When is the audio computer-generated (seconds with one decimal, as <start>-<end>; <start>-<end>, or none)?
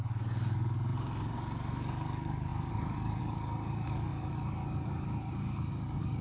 0.0-6.2